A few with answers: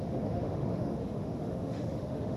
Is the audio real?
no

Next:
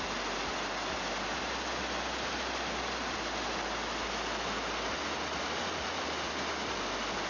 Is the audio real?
yes